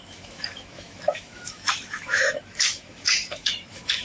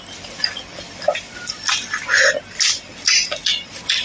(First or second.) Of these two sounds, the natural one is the second